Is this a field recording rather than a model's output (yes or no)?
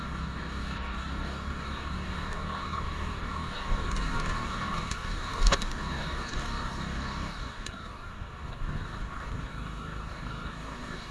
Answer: no